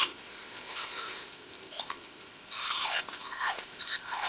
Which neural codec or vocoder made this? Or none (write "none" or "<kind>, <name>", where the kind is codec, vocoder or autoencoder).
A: codec, ZipCodec